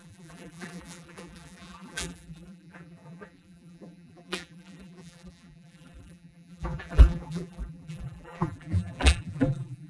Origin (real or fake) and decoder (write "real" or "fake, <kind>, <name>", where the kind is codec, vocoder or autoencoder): fake, vocoder, BigVGAN v2